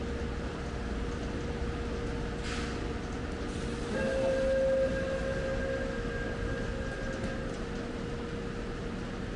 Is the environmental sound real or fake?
real